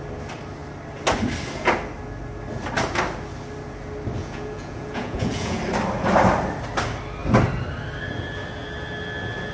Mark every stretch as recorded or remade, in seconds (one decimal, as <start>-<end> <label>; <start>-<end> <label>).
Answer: 0.0-4.2 recorded; 4.2-5.6 remade; 5.6-9.5 recorded